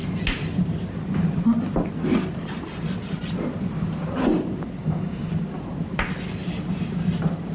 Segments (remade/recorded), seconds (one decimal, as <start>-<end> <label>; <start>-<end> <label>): 0.0-4.8 recorded; 4.8-5.3 remade; 5.3-7.5 recorded